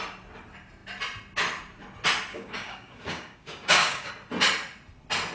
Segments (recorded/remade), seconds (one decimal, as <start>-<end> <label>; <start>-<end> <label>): 0.0-2.3 recorded; 2.3-4.1 remade; 4.1-5.3 recorded